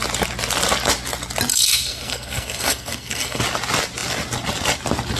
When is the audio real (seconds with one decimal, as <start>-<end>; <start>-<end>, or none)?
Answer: 0.0-1.5; 3.4-5.2